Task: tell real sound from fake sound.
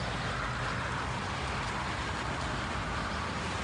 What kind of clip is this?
real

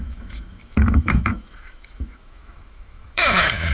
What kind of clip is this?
fake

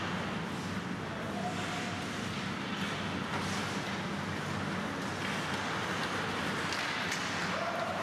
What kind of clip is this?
real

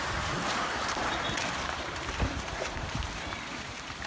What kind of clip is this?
fake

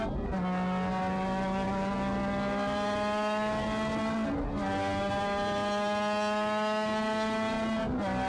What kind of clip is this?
real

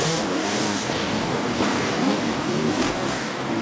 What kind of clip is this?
fake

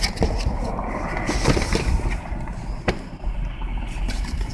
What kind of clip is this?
fake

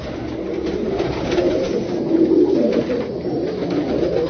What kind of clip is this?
real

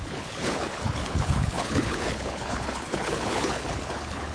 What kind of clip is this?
fake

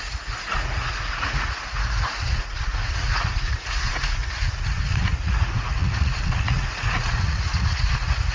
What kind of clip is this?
fake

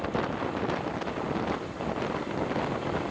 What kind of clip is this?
real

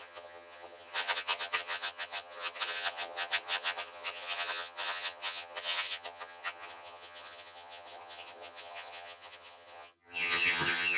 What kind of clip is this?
fake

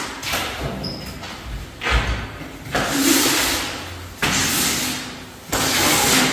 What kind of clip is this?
real